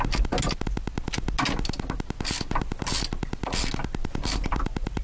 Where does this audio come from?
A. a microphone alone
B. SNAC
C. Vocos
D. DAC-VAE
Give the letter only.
A